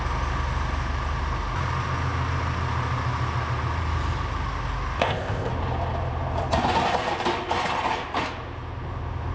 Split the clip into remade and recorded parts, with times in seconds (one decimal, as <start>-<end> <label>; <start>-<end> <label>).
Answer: 0.0-5.0 recorded; 5.0-5.5 remade; 5.5-9.3 recorded